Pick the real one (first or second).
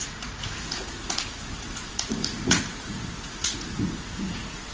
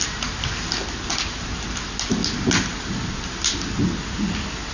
second